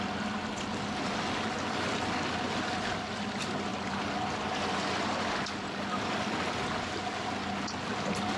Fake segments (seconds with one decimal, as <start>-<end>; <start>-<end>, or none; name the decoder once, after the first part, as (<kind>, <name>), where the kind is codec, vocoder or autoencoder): none